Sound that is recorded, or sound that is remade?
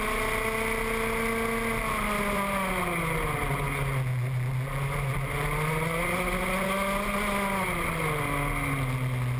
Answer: recorded